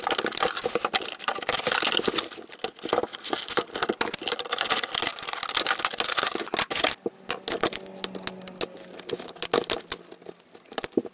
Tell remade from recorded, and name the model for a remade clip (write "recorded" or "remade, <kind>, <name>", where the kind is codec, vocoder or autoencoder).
recorded